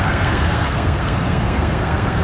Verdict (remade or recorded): remade